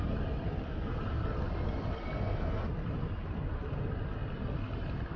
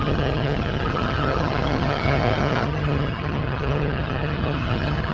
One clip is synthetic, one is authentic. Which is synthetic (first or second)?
second